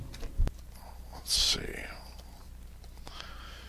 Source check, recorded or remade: recorded